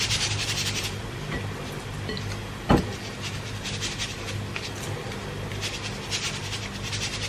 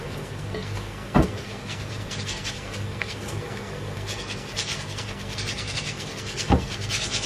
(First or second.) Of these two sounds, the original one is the first